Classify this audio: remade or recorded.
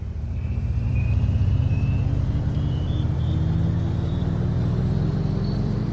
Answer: remade